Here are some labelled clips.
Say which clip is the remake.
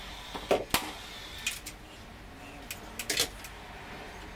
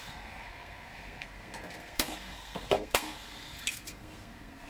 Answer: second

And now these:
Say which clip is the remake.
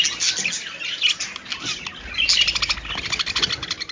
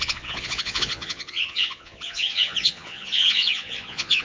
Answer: second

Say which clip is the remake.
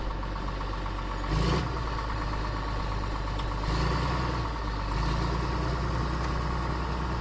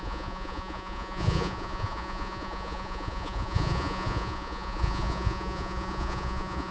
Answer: second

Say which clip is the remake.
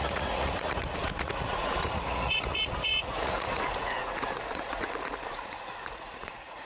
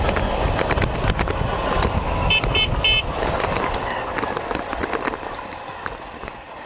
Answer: first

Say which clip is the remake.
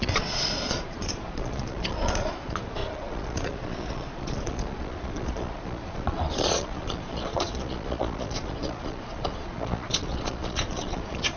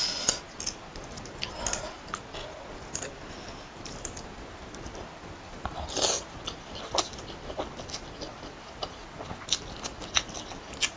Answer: first